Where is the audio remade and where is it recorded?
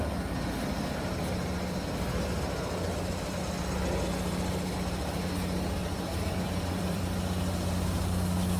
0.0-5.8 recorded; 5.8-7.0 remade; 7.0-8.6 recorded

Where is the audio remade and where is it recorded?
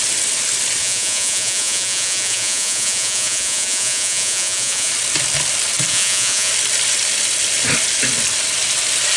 0.0-0.8 recorded; 0.8-4.9 remade; 4.9-5.9 recorded; 5.9-6.5 remade; 6.5-9.2 recorded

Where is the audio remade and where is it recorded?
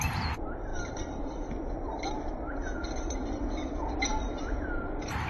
0.0-0.7 recorded; 0.7-2.1 remade; 2.1-4.1 recorded; 4.1-5.3 remade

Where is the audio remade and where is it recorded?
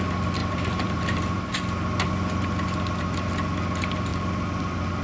0.0-0.4 recorded; 0.4-1.5 remade; 1.5-5.0 recorded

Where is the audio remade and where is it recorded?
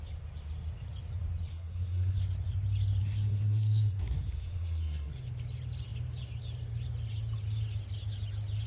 0.0-1.5 recorded; 1.5-2.2 remade; 2.2-3.0 recorded; 3.0-5.1 remade; 5.1-8.7 recorded